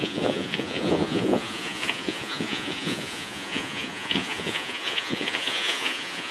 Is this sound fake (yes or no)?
yes